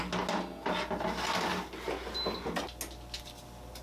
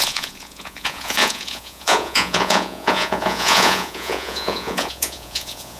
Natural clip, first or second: first